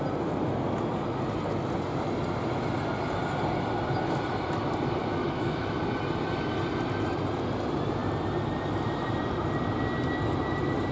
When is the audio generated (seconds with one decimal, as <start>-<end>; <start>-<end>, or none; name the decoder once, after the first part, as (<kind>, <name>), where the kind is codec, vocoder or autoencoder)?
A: 5.0-5.8 (autoencoder, DAC-VAE)